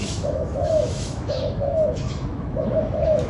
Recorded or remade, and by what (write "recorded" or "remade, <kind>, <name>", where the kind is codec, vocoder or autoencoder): remade, autoencoder, DAC-VAE